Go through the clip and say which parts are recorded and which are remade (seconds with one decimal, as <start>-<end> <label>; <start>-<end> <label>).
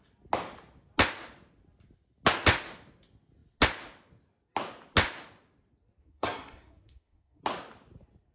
0.0-6.0 recorded; 6.0-7.4 remade; 7.4-8.3 recorded